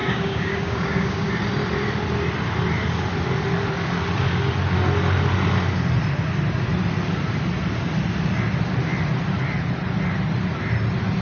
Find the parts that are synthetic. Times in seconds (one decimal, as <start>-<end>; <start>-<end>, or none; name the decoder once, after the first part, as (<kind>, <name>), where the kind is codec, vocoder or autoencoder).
0.0-1.3 (codec, DAC)